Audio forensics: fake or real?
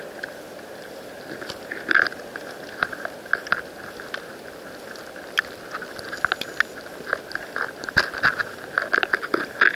real